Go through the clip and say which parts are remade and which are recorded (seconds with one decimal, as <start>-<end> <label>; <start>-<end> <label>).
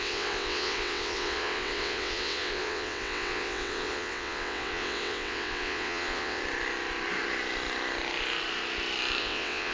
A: 0.0-6.4 remade; 6.4-9.2 recorded; 9.2-9.7 remade